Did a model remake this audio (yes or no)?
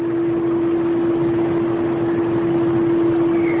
no